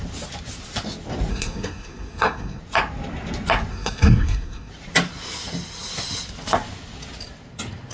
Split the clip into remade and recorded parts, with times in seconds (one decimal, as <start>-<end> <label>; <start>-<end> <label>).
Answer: 0.0-1.3 recorded; 1.3-2.6 remade; 2.6-3.7 recorded; 3.7-4.7 remade; 4.7-7.9 recorded

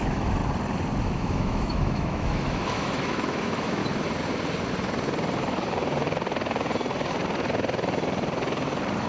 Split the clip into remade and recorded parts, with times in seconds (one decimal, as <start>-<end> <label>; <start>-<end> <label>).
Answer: 0.0-0.4 remade; 0.4-1.0 recorded; 1.0-3.8 remade; 3.8-9.1 recorded

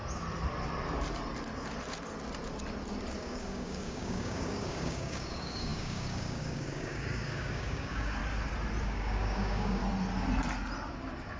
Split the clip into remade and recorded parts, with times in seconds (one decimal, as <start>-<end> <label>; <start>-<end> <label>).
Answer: 0.0-3.2 recorded; 3.2-8.2 remade; 8.2-8.8 recorded; 8.8-9.8 remade; 9.8-11.4 recorded

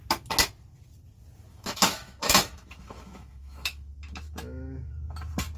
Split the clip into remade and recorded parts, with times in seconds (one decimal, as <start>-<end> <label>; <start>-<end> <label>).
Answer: 0.0-1.5 recorded; 1.5-4.9 remade; 4.9-5.6 recorded

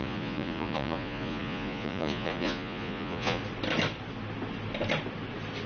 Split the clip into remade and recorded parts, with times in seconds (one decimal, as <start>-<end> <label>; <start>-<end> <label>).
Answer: 0.0-3.4 remade; 3.4-5.7 recorded

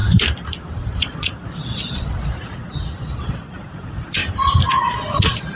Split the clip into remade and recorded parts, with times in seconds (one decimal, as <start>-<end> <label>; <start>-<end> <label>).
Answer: 0.0-0.8 recorded; 0.8-4.2 remade; 4.2-4.8 recorded; 4.8-5.6 remade

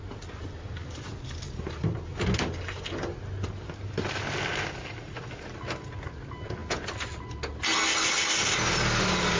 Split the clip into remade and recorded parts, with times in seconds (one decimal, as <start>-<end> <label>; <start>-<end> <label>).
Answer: 0.0-9.4 recorded